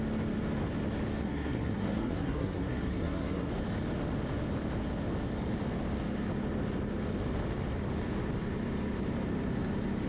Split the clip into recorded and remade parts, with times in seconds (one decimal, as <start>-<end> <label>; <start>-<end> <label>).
0.0-1.2 recorded; 1.2-3.5 remade; 3.5-10.1 recorded